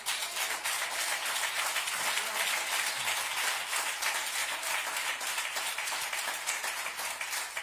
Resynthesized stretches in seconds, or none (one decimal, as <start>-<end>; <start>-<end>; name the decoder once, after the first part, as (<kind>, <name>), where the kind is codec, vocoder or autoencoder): 4.4-7.6 (vocoder, BigVGAN v2)